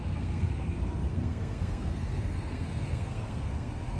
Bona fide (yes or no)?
no